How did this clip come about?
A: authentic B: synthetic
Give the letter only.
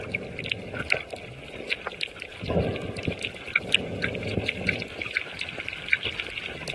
A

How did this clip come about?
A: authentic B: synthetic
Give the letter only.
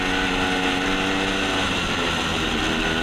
A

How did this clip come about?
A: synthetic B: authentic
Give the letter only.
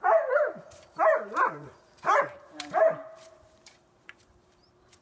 A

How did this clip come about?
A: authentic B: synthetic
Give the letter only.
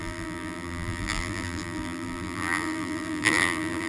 B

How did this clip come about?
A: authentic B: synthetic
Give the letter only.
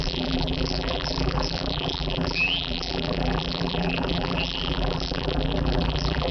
B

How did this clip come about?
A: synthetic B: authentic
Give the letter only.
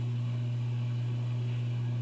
B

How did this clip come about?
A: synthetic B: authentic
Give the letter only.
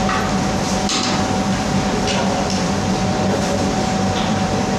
A